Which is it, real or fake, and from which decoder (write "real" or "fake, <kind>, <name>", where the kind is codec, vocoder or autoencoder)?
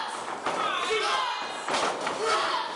real